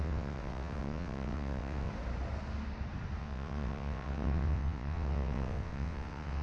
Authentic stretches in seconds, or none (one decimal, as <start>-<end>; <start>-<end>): 1.9-3.2